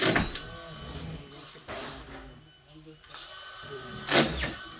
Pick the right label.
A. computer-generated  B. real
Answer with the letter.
B